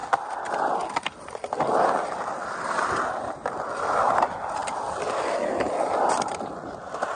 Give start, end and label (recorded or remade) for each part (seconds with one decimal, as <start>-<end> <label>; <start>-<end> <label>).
0.0-7.2 recorded